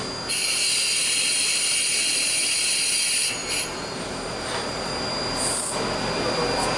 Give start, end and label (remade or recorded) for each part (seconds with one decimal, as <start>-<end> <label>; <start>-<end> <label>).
0.0-1.9 recorded; 1.9-2.7 remade; 2.7-3.4 recorded; 3.4-4.9 remade; 4.9-6.8 recorded